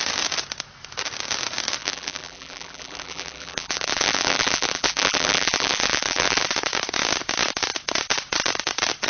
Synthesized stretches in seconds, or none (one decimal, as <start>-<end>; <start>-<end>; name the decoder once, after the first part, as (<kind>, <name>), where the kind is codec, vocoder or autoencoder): 1.8-6.4 (vocoder, BigVGAN v2)